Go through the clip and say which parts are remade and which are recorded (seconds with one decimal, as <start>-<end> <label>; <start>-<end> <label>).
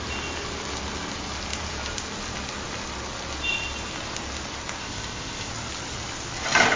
0.0-4.8 recorded; 4.8-5.5 remade; 5.5-6.8 recorded